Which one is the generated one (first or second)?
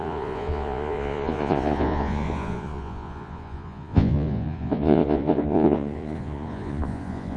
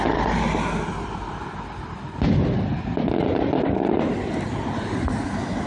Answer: first